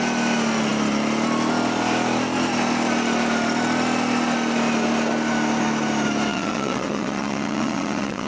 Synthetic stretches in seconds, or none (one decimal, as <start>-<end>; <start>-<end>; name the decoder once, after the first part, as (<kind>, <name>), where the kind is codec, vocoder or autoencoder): 6.3-8.3 (vocoder, WaveNeXt)